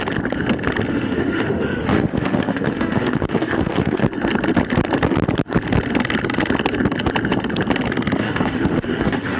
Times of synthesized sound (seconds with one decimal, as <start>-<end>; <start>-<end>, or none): 0.9-4.0; 8.2-9.4